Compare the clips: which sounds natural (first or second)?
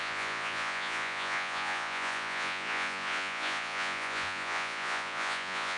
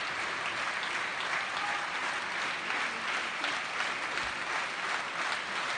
second